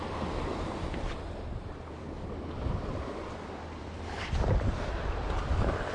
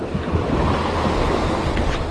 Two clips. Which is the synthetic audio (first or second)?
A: first